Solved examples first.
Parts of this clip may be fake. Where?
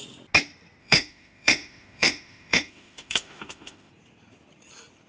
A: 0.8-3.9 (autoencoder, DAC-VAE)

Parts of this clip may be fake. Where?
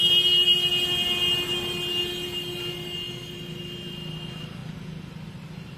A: none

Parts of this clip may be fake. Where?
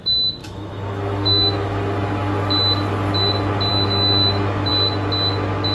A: 0.4-1.8 (autoencoder, DAC-VAE); 3.7-4.7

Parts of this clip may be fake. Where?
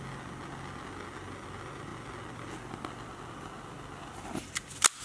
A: none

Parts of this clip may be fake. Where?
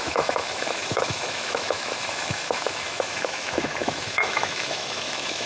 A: 0.0-5.5 (autoencoder, DAC-VAE)